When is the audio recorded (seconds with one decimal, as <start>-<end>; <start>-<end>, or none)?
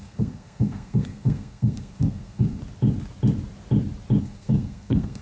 2.6-4.2